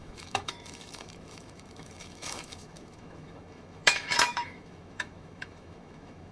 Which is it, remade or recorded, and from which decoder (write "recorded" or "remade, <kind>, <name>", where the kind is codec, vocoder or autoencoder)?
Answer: remade, autoencoder, DAC-VAE